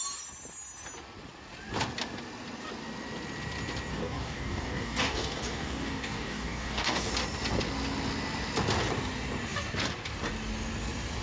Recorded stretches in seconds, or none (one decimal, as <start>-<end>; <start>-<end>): 0.0-3.9; 7.1-11.2